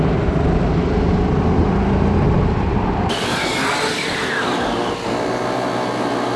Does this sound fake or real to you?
real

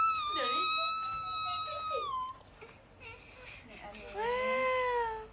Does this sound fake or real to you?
real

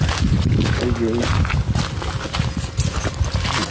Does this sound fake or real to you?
real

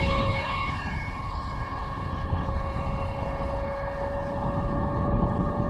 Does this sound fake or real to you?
fake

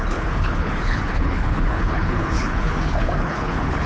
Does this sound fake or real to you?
fake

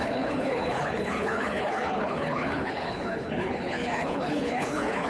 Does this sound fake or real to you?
fake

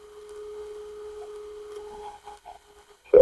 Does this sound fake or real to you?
fake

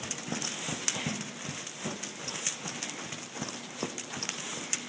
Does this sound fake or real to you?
real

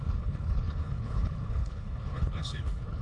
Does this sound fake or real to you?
fake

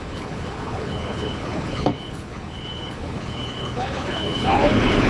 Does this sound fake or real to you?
fake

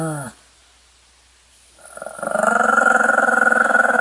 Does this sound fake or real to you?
real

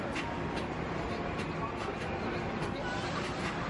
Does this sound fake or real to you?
real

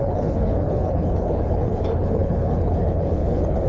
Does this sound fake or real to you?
fake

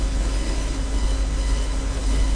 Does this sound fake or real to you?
fake